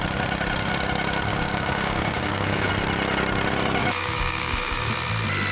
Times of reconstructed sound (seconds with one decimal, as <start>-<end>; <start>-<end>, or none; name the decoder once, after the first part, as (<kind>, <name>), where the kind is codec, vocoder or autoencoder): 1.3-2.7 (codec, DAC); 3.8-4.9